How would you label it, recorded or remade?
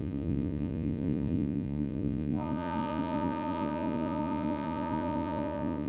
remade